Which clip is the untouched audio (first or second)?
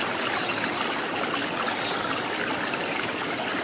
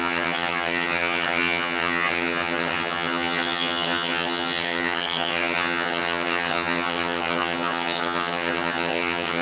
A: first